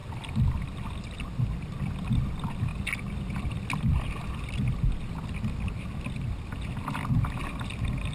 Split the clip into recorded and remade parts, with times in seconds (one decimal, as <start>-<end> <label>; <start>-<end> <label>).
0.0-8.1 recorded